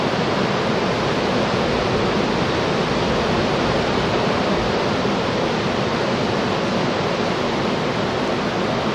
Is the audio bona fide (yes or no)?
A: yes